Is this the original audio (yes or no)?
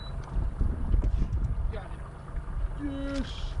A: yes